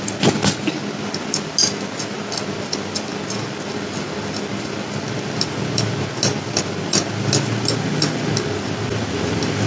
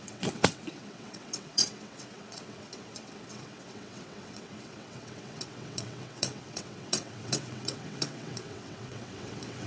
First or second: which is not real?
second